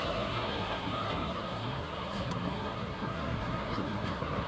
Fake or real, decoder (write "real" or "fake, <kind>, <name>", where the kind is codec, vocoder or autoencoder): fake, codec, SNAC